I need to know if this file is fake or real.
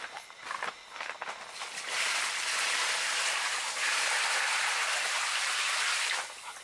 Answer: real